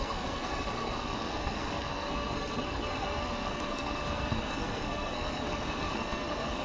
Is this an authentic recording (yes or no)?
no